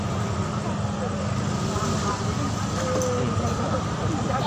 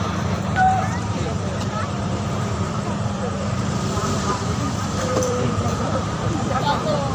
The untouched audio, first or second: first